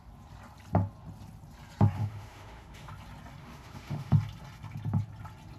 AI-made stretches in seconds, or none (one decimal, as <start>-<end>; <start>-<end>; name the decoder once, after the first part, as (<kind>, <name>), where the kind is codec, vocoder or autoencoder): 2.0-2.9 (autoencoder, DAC-VAE); 3.4-4.1